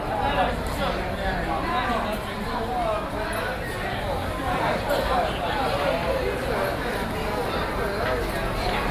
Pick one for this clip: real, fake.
real